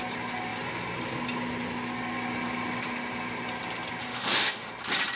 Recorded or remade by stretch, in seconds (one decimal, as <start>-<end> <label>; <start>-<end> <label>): 0.0-4.0 recorded; 4.0-4.7 remade; 4.7-5.2 recorded